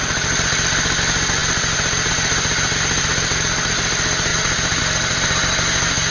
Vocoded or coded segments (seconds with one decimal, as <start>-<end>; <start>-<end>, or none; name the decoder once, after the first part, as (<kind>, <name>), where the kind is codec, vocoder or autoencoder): 4.3-4.8 (vocoder, BigVGAN v2)